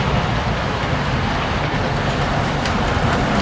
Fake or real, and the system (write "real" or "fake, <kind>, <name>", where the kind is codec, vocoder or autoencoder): real